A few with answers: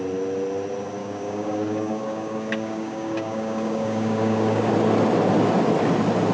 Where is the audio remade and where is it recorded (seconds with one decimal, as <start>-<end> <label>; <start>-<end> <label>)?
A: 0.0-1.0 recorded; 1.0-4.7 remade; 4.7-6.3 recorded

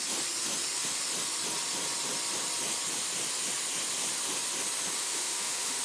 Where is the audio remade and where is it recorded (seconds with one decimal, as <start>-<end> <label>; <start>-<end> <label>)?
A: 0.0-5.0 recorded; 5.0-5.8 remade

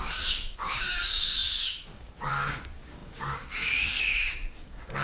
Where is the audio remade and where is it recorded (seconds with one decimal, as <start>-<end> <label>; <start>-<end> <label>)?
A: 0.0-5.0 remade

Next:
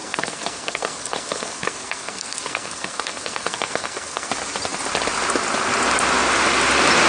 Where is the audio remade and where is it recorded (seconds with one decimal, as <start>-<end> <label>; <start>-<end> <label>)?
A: 0.0-4.3 remade; 4.3-7.1 recorded

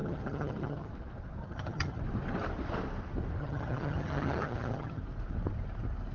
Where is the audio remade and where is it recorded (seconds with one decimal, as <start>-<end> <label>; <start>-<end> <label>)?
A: 0.0-0.9 remade; 0.9-1.4 recorded; 1.4-2.0 remade; 2.0-3.4 recorded; 3.4-5.0 remade; 5.0-6.1 recorded

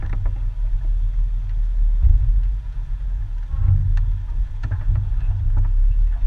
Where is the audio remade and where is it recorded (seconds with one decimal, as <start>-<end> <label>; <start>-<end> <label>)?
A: 0.0-2.1 recorded; 2.1-3.2 remade; 3.2-4.4 recorded; 4.4-5.1 remade; 5.1-6.3 recorded

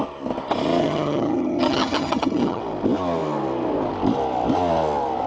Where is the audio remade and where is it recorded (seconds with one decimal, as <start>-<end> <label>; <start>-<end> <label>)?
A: 0.0-0.8 recorded; 0.8-2.6 remade; 2.6-5.3 recorded